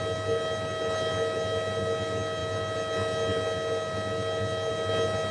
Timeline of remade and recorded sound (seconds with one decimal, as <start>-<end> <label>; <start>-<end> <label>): 0.0-5.3 recorded